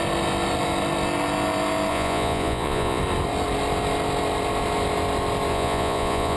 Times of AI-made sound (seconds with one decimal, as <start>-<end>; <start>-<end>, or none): 1.9-3.0; 5.5-6.4